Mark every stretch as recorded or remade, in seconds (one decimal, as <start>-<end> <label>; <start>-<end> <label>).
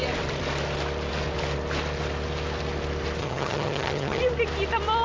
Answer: 0.0-3.2 recorded; 3.2-4.2 remade; 4.2-5.0 recorded